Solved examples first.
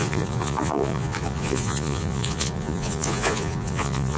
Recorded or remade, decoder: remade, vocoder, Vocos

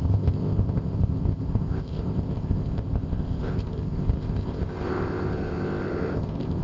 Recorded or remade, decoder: remade, codec, ZipCodec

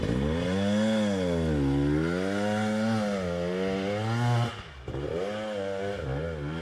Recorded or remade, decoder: recorded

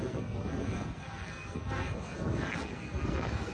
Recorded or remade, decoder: remade, codec, SNAC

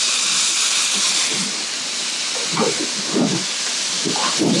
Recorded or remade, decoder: recorded